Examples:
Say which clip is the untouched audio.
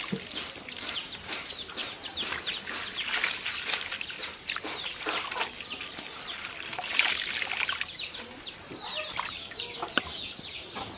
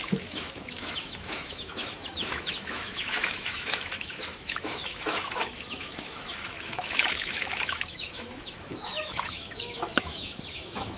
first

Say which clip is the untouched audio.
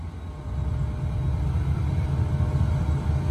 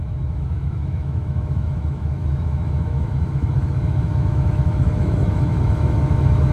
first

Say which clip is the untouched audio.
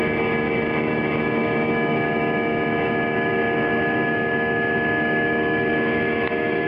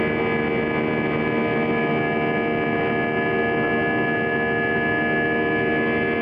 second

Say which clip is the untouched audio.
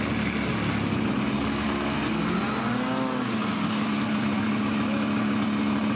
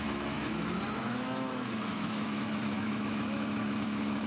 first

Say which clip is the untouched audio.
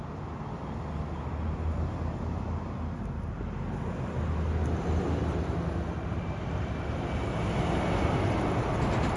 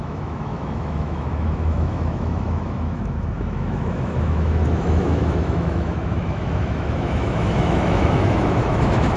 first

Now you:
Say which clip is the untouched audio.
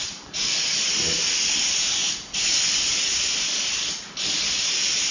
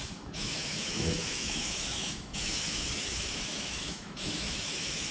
first